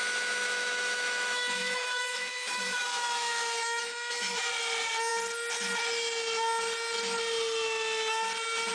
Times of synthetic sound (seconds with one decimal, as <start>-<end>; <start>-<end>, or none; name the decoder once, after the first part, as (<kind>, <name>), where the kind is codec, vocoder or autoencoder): 0.4-4.5 (autoencoder, DAC-VAE)